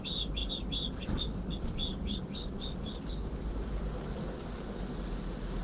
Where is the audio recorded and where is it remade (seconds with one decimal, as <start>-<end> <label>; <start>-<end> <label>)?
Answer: 0.0-0.4 recorded; 0.4-3.8 remade; 3.8-5.6 recorded